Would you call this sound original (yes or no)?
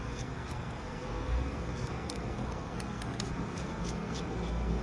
no